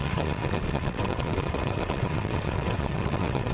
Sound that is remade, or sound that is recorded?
remade